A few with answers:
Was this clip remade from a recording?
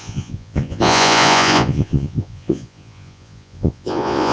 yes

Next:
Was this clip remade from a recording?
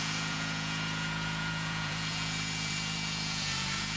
yes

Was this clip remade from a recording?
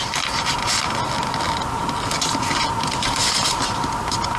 no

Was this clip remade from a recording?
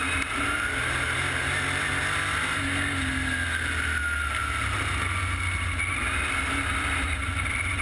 no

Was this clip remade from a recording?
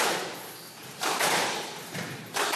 no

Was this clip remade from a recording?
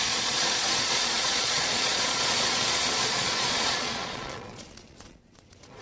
yes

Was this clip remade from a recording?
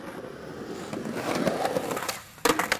no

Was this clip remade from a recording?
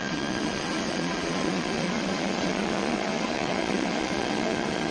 yes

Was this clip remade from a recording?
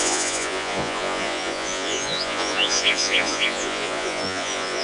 yes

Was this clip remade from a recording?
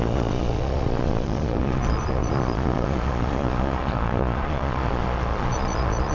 yes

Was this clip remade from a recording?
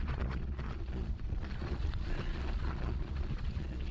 yes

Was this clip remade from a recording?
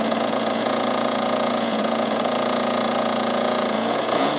yes